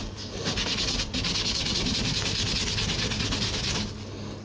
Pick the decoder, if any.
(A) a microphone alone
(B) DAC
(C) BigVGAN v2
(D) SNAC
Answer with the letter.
A